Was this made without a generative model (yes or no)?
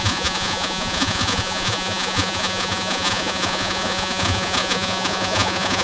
no